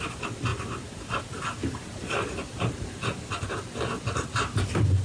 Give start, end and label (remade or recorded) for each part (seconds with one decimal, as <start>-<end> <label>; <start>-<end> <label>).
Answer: 0.0-0.5 recorded; 0.5-1.2 remade; 1.2-1.6 recorded; 1.6-3.0 remade; 3.0-5.0 recorded